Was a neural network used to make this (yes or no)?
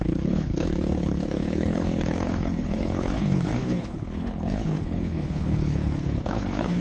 yes